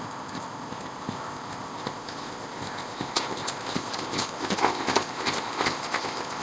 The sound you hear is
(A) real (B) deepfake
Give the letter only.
B